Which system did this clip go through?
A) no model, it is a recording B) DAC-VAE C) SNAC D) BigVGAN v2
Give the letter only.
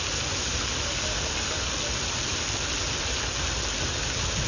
A